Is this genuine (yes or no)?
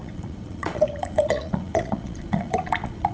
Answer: no